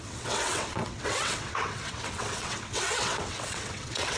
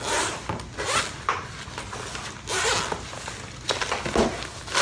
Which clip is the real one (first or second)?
second